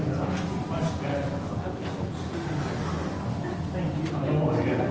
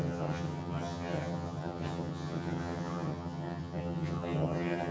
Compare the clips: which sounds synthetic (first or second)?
second